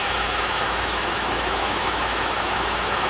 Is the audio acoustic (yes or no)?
no